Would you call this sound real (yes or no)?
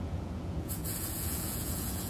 no